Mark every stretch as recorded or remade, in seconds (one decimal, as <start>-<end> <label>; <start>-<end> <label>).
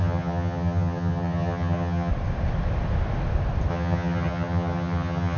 0.0-2.1 remade; 2.1-3.7 recorded; 3.7-5.4 remade